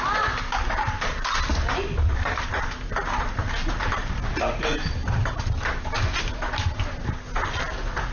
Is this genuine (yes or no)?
yes